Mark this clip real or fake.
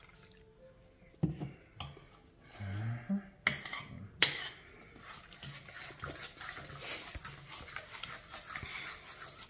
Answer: real